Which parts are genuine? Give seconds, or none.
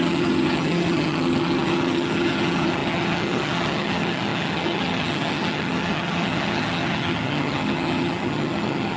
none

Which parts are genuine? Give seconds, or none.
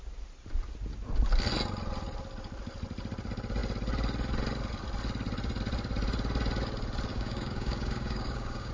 0.0-7.1